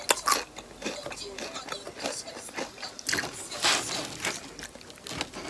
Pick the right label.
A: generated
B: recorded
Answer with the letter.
B